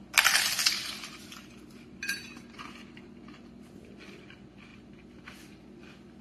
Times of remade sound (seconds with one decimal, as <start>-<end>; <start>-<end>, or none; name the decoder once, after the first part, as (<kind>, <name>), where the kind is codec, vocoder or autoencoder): 0.8-3.8 (vocoder, BigVGAN v2); 4.7-5.8